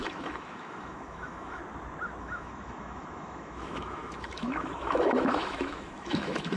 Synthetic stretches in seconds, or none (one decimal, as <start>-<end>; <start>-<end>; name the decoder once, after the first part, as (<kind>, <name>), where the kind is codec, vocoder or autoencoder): 0.0-1.6 (autoencoder, DAC-VAE); 2.2-6.6